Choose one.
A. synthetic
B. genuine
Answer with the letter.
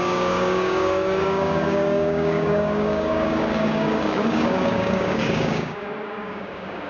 A